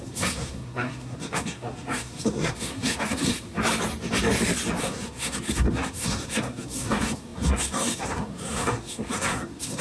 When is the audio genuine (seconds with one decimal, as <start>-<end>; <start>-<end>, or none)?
3.5-4.8